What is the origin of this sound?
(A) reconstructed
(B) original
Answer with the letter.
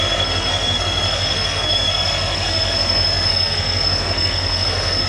A